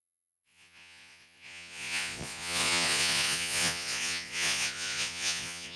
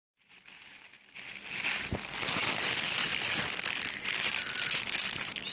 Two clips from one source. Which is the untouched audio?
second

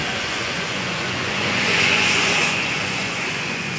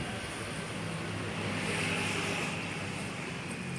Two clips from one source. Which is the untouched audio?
second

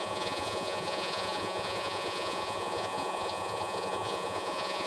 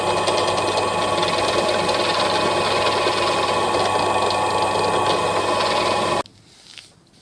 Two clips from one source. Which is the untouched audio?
second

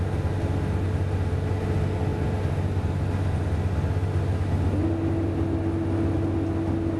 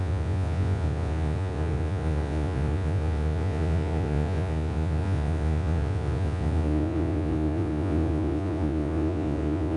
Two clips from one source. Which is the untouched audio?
first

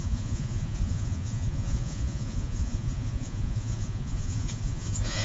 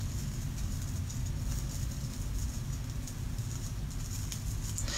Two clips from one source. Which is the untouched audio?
second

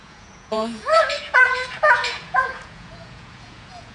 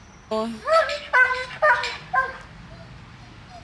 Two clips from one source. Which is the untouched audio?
second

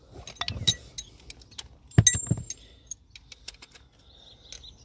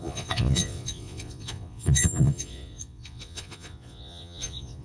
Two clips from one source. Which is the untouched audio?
first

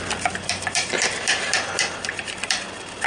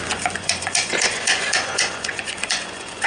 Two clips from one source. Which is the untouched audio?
first